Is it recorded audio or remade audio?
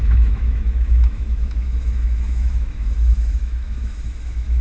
remade